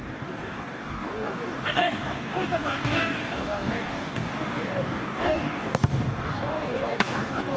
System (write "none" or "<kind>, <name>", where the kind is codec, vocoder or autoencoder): codec, DAC